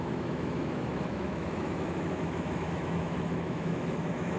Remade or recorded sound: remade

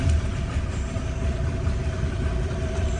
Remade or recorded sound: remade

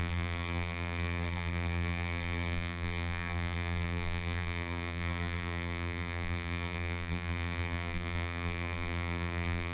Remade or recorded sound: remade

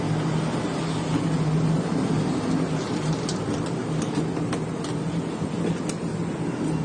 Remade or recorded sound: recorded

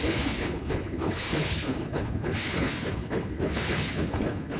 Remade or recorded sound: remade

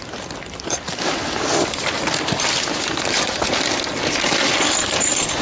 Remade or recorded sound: remade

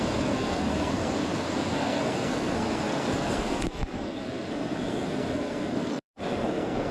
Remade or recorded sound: remade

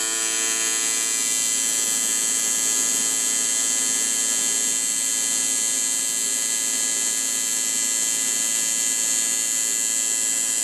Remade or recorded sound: recorded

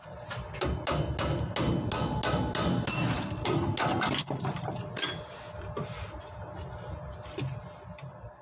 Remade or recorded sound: recorded